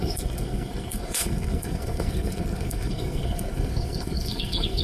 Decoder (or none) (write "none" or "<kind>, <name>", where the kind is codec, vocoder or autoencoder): codec, SNAC